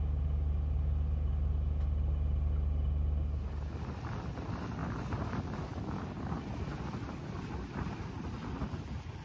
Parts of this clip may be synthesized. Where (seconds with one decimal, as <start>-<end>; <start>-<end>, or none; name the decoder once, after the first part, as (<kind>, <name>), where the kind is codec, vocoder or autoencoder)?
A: 4.8-5.4 (vocoder, BigVGAN v2)